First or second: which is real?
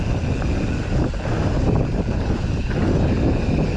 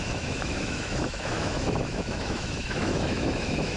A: first